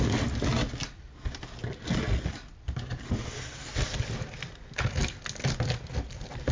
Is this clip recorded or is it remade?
recorded